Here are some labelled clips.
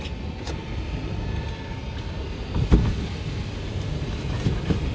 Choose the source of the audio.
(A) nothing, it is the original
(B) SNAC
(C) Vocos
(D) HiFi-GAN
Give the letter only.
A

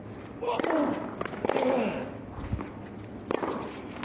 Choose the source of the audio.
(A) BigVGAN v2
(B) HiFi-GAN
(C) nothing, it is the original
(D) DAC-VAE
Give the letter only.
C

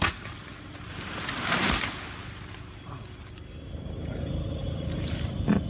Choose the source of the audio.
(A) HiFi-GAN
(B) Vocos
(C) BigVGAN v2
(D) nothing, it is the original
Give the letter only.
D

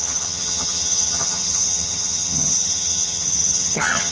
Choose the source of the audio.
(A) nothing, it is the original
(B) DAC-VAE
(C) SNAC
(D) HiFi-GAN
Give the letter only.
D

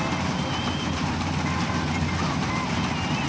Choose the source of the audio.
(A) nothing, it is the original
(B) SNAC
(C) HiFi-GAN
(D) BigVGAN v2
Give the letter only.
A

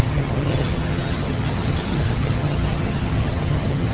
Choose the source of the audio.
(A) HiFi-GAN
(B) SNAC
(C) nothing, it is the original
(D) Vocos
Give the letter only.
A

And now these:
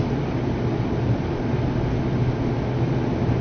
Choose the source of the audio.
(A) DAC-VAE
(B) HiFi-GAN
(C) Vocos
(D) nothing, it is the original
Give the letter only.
D